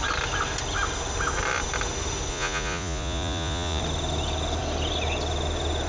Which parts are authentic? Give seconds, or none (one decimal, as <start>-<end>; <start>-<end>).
0.0-2.3; 3.8-5.9